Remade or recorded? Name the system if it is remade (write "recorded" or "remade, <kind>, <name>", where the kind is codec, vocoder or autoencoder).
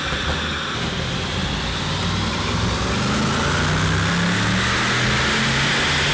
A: recorded